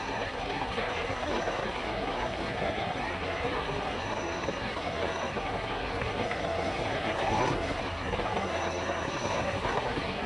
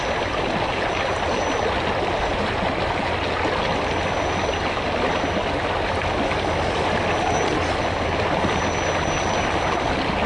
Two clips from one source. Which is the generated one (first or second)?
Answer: first